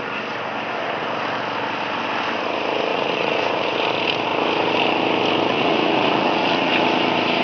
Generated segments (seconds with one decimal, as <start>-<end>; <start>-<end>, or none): 2.9-3.7; 5.5-6.7

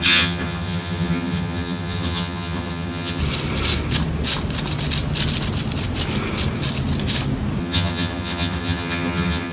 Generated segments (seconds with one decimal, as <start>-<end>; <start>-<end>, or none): 0.0-3.2; 7.6-9.5

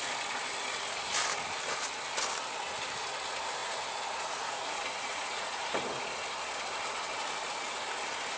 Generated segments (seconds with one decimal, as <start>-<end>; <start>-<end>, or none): 3.6-5.6

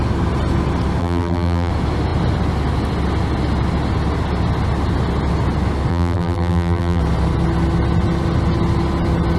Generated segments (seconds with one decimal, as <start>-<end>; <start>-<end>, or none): 1.0-1.7; 5.9-7.0

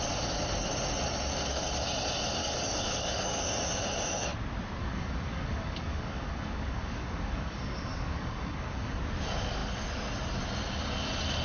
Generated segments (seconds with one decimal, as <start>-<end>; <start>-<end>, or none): 2.4-3.4; 4.8-9.0

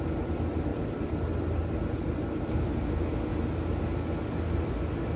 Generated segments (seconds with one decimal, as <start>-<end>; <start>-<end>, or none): none

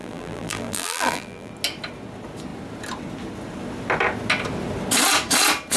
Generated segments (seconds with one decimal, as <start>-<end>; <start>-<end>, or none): 0.0-1.5

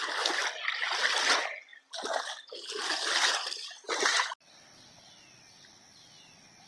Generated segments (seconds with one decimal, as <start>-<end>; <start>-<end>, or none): none